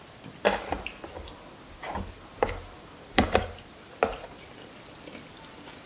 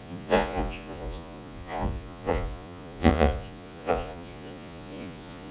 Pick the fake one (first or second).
second